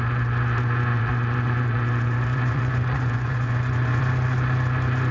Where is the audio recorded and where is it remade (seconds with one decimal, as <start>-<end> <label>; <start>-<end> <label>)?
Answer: 0.0-0.9 recorded; 0.9-4.0 remade; 4.0-5.1 recorded

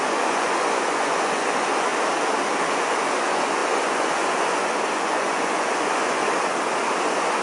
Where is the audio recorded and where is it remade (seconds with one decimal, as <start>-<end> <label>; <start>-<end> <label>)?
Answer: 0.0-1.9 remade; 1.9-2.8 recorded; 2.8-6.2 remade; 6.2-7.0 recorded; 7.0-7.4 remade